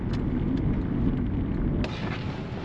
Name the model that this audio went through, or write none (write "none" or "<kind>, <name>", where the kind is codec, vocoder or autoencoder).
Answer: none